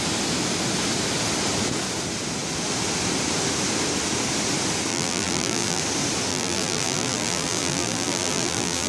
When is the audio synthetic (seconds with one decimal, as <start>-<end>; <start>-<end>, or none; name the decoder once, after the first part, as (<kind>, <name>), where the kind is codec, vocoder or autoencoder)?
4.9-5.8 (vocoder, BigVGAN v2); 6.3-8.9